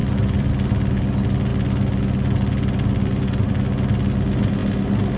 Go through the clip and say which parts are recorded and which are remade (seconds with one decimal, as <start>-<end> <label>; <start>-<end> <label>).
0.0-0.5 remade; 0.5-1.5 recorded; 1.5-3.7 remade; 3.7-5.2 recorded